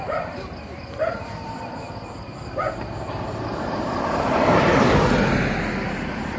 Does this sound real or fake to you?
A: fake